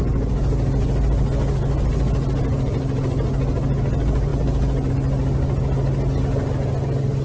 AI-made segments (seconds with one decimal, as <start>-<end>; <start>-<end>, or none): none